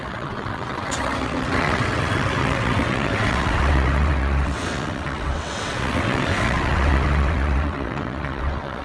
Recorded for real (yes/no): no